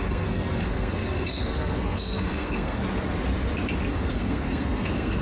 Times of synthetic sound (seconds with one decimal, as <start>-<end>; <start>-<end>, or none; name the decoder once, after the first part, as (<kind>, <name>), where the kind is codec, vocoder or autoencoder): 0.0-2.8 (codec, SNAC); 3.9-5.2